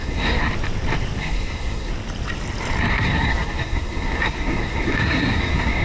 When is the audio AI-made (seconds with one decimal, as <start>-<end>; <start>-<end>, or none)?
0.0-0.4; 1.2-1.9; 2.9-5.8